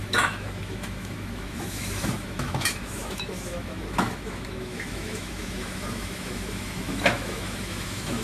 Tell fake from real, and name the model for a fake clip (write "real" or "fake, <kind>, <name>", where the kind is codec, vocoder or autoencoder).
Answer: fake, autoencoder, DAC-VAE